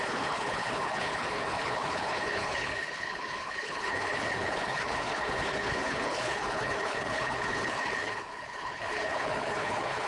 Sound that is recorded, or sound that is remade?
remade